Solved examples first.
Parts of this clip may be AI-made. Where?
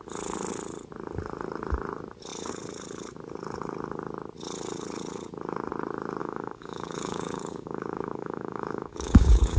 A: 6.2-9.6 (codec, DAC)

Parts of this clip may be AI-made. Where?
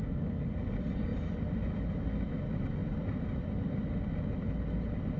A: none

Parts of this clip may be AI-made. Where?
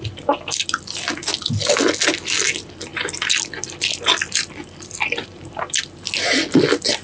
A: none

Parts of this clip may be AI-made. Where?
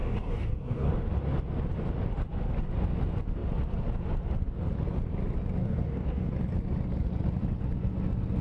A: 0.0-0.9 (codec, DAC); 5.6-6.3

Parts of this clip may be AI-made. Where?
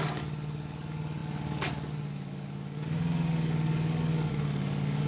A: 0.0-5.1 (codec, DAC)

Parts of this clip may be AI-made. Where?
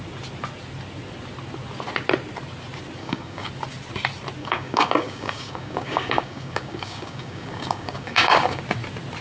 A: 3.0-3.5 (codec, DAC); 4.4-8.6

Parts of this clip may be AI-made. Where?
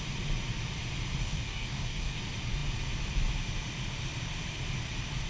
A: 1.2-2.2 (codec, DAC)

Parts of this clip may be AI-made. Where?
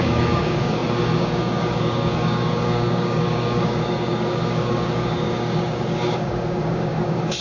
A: 0.0-7.4 (codec, DAC)